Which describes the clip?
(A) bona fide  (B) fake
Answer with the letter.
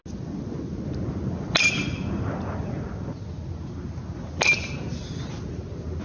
A